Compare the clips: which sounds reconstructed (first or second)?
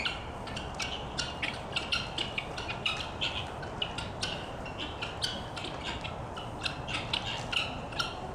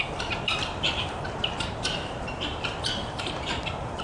second